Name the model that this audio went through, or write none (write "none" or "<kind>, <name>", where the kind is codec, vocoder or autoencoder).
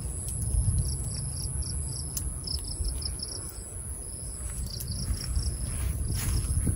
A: none